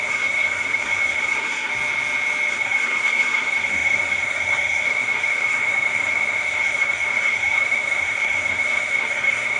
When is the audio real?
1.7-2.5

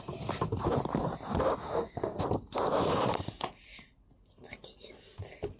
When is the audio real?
0.0-1.6; 2.2-5.6

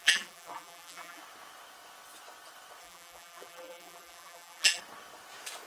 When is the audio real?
1.2-2.8; 4.8-5.7

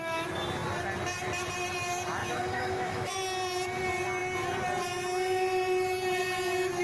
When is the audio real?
0.0-2.2; 3.1-6.8

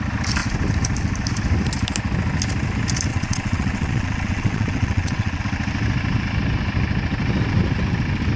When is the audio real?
0.0-3.1; 5.4-8.4

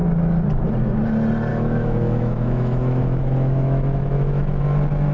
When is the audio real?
0.0-1.5; 4.6-5.1

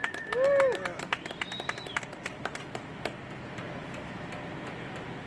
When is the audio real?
0.0-5.3

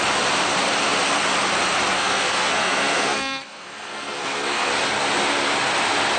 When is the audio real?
0.0-1.9; 4.7-6.2